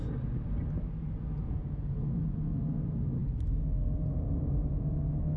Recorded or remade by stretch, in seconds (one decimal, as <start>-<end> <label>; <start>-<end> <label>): 0.0-1.4 recorded; 1.4-2.6 remade; 2.6-5.4 recorded